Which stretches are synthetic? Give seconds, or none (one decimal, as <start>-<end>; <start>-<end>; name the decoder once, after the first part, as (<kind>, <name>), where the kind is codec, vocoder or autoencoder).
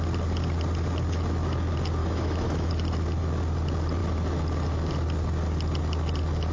2.0-2.7 (autoencoder, DAC-VAE)